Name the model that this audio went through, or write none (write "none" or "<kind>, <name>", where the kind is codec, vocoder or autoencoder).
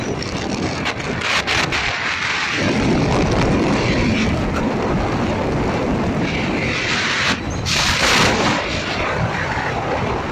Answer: vocoder, BigVGAN v2